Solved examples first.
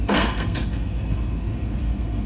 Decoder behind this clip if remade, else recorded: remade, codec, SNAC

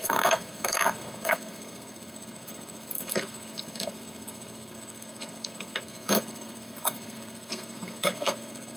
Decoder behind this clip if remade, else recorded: remade, codec, SNAC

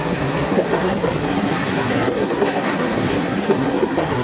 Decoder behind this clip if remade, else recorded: remade, codec, SNAC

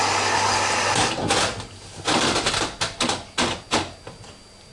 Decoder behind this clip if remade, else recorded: recorded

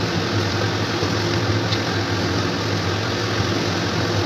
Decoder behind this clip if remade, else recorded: recorded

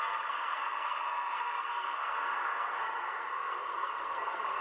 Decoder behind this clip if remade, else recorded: remade, codec, SNAC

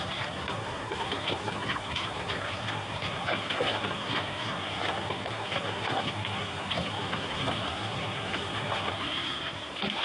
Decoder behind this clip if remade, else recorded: remade, codec, SNAC